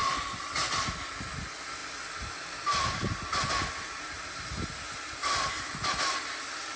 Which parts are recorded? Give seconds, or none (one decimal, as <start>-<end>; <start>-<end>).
0.0-6.8